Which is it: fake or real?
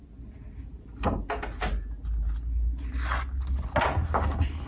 real